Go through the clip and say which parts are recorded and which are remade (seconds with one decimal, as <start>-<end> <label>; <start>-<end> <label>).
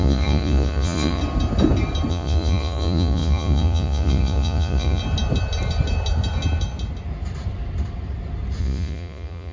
0.0-1.2 remade; 1.2-2.1 recorded; 2.1-5.0 remade; 5.0-8.6 recorded; 8.6-9.5 remade